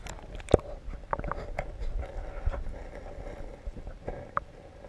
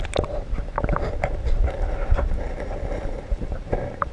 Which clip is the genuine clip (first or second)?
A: first